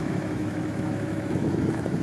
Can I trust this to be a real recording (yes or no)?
no